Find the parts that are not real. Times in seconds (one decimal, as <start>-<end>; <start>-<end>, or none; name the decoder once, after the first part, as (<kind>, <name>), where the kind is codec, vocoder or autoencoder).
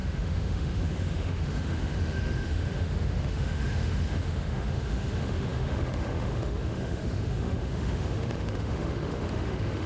0.0-9.9 (autoencoder, DAC-VAE)